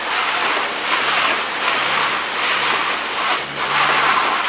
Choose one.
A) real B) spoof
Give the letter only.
A